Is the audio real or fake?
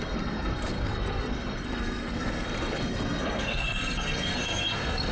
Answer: fake